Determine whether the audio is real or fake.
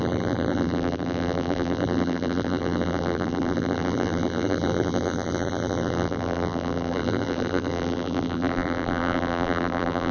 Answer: fake